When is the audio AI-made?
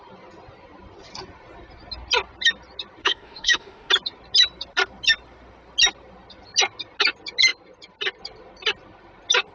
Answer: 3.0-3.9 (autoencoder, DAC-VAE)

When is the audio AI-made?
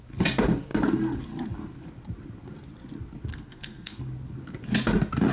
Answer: 3.3-4.0 (codec, SNAC)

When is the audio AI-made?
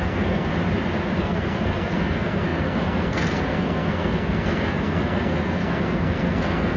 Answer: 0.0-0.5 (codec, SNAC); 1.2-6.8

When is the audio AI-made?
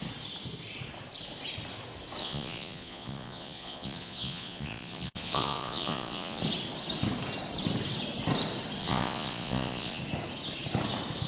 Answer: 2.2-6.4 (vocoder, Vocos); 8.8-10.0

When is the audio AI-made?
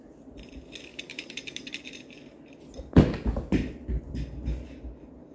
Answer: 0.9-1.7 (vocoder, BigVGAN v2)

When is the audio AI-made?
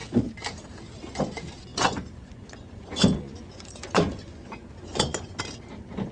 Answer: 1.7-5.4 (vocoder, Vocos)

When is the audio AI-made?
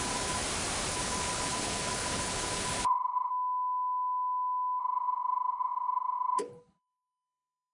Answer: 0.0-0.4 (codec, HILCodec); 0.9-3.3; 4.8-7.7